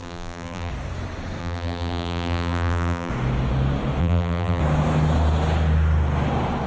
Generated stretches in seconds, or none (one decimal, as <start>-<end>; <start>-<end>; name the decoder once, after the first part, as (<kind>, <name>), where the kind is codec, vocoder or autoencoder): 0.0-0.7 (vocoder, BigVGAN v2); 1.4-3.1; 4.0-4.6